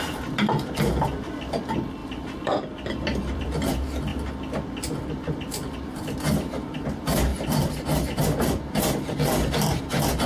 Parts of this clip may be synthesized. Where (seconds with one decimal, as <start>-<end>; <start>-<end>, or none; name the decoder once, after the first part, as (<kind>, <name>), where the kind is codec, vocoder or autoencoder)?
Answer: 0.0-4.1 (vocoder, BigVGAN v2); 5.1-7.3; 9.8-10.3